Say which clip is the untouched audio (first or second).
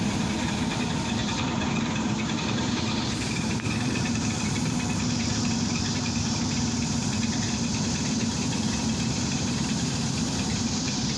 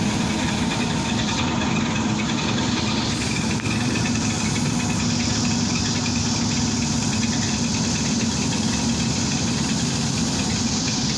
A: second